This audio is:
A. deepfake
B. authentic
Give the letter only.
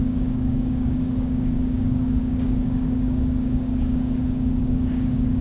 A